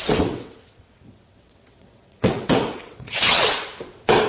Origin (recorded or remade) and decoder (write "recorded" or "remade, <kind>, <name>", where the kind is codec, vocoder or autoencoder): remade, vocoder, WaveNeXt